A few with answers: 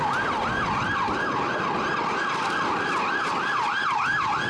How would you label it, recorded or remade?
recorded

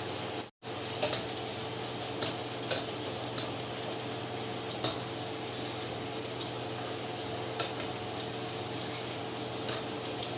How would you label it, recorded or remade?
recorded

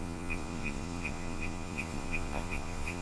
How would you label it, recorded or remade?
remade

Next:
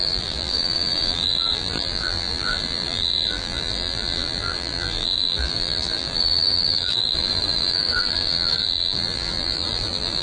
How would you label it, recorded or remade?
remade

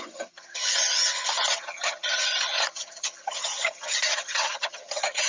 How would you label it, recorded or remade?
remade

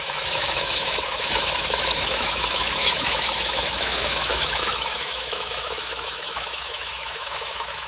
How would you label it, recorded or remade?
remade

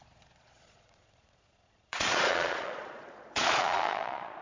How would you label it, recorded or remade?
remade